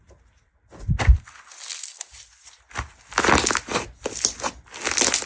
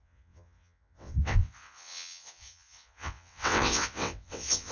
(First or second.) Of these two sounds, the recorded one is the first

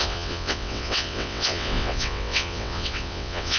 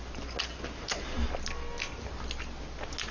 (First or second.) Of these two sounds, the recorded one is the second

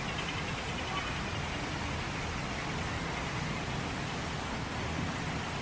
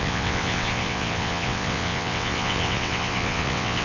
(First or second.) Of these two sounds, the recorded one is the first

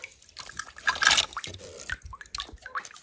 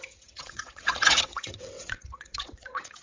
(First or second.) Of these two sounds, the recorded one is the first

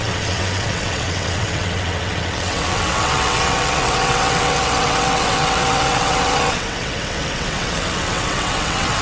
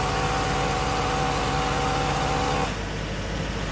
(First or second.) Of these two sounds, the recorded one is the second